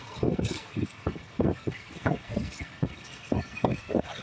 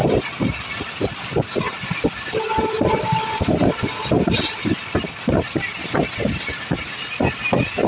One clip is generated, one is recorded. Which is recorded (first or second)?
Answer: second